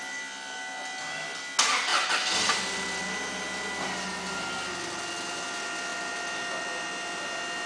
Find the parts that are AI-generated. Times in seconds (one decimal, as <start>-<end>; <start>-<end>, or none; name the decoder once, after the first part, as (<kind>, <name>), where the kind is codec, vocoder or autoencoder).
none